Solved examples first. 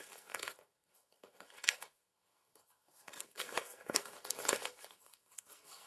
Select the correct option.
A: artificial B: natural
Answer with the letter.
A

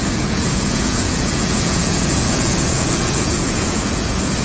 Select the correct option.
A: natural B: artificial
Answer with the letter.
B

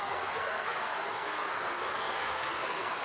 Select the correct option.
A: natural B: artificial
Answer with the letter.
B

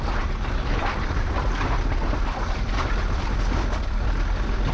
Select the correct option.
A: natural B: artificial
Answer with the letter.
B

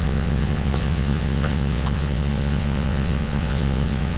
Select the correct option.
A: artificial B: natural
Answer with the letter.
A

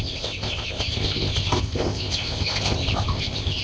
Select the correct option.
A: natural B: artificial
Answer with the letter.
B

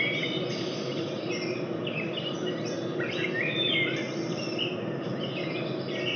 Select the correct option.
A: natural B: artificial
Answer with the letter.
A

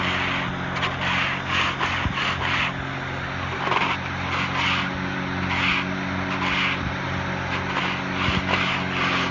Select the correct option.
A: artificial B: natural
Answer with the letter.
B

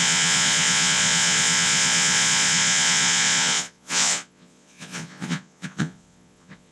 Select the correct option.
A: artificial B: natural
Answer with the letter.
A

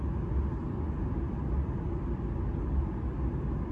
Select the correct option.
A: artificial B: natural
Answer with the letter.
B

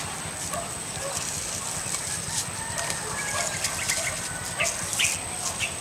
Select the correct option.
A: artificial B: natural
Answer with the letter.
B